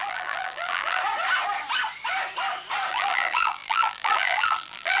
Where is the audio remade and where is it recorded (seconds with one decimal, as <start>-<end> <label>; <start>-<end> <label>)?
0.0-1.0 remade; 1.0-2.9 recorded; 2.9-5.0 remade

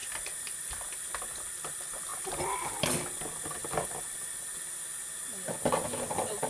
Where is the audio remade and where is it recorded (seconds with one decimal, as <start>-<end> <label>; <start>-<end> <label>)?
0.0-6.5 recorded